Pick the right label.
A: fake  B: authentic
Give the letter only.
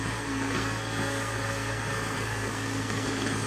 A